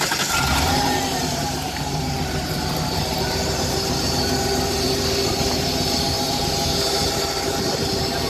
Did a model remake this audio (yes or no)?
yes